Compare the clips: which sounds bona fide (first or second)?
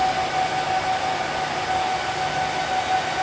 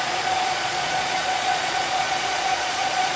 first